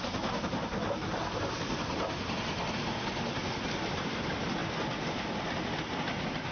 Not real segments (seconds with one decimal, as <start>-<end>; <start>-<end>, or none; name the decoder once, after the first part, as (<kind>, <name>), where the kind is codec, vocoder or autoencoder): none